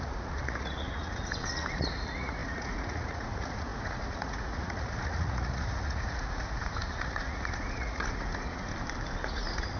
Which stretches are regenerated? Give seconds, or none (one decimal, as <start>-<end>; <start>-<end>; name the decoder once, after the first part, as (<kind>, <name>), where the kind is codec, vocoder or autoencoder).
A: 0.0-8.7 (vocoder, Vocos); 9.3-9.8